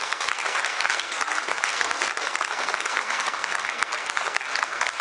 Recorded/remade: remade